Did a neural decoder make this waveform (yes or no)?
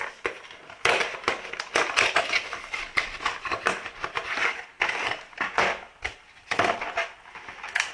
no